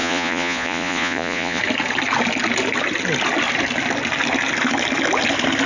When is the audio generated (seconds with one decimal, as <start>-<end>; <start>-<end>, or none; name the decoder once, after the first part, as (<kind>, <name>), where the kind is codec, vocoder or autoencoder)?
0.0-1.6 (vocoder, Vocos)